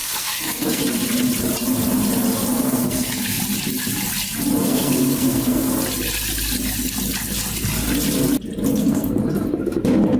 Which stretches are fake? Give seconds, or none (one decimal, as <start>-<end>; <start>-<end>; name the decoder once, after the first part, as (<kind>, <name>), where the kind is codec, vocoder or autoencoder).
0.0-0.8 (codec, SNAC); 2.5-3.4; 4.6-5.7; 8.7-9.2